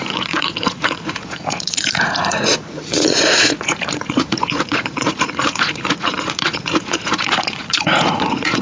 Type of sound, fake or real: fake